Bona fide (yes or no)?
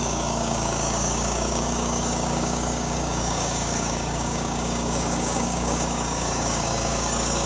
no